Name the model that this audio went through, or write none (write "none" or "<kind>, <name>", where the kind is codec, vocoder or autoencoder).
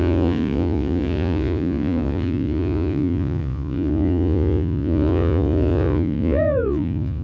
vocoder, Vocos